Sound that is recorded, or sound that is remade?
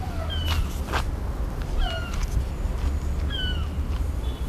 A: recorded